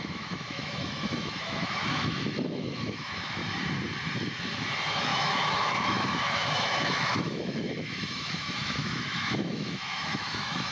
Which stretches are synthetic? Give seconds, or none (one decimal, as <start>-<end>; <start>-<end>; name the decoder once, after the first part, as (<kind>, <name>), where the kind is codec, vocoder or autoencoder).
0.0-3.4 (autoencoder, DAC-VAE); 5.0-10.7